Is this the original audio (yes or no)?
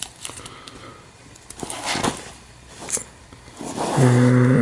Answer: no